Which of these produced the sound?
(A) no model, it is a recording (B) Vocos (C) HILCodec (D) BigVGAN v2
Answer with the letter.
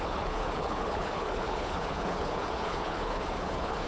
C